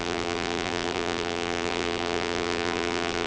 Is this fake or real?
fake